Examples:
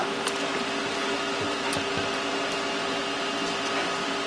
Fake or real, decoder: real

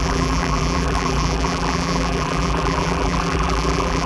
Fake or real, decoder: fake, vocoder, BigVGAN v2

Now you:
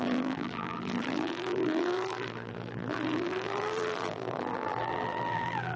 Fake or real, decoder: fake, vocoder, BigVGAN v2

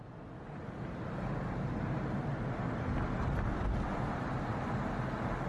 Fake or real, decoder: real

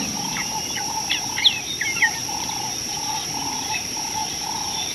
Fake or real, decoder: fake, vocoder, BigVGAN v2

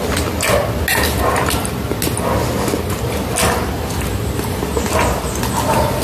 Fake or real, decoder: real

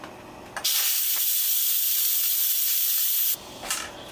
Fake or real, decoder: real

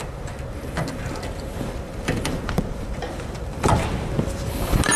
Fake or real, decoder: fake, vocoder, BigVGAN v2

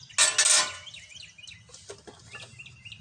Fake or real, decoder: real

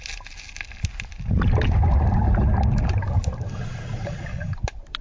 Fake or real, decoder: real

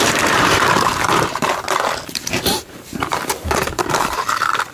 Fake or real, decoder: fake, vocoder, BigVGAN v2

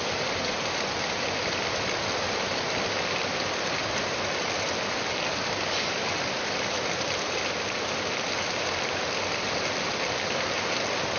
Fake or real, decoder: fake, vocoder, BigVGAN v2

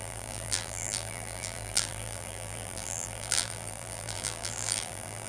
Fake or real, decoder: fake, vocoder, BigVGAN v2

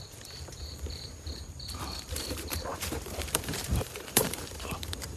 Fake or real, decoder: fake, vocoder, BigVGAN v2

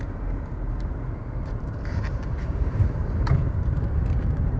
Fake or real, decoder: fake, vocoder, BigVGAN v2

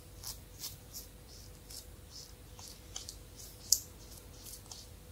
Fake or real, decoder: real